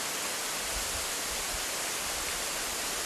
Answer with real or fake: real